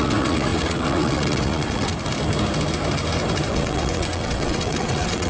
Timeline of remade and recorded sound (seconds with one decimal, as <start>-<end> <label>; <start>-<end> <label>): 0.0-1.9 remade; 1.9-3.5 recorded; 3.5-5.3 remade